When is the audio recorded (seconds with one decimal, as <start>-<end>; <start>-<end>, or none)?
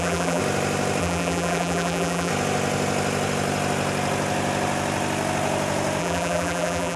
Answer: 0.4-1.0; 2.3-6.0